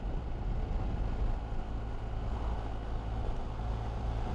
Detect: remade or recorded recorded